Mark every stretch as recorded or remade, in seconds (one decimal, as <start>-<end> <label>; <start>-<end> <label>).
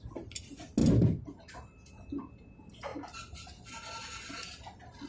0.0-5.1 recorded